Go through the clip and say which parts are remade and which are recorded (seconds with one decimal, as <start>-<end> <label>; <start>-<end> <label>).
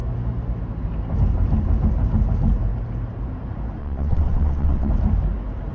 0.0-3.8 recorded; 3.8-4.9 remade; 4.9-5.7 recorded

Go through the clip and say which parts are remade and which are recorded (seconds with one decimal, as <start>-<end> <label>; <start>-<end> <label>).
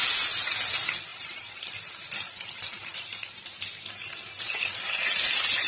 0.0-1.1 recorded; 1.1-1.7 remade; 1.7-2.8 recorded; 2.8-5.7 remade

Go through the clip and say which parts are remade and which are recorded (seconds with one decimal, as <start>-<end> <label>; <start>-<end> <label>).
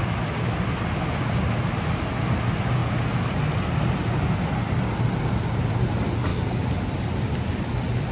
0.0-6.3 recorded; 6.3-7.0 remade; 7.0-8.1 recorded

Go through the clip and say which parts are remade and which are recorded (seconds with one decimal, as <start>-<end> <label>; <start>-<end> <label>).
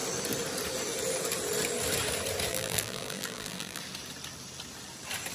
0.0-2.5 recorded; 2.5-3.8 remade; 3.8-5.3 recorded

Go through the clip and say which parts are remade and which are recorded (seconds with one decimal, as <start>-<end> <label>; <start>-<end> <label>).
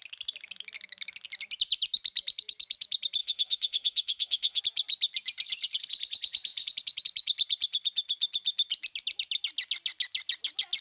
0.0-3.2 recorded; 3.2-4.6 remade; 4.6-10.8 recorded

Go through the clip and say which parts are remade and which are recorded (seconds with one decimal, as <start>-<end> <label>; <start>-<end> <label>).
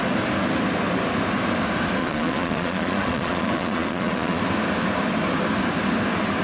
0.0-2.0 recorded; 2.0-4.4 remade; 4.4-6.4 recorded